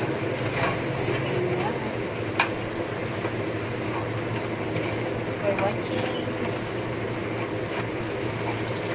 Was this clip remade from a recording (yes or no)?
no